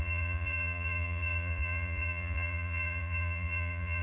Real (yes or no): no